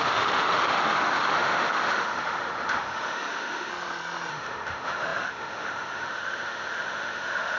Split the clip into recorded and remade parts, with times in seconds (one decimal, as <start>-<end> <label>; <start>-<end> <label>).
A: 0.0-3.7 remade; 3.7-4.3 recorded; 4.3-7.6 remade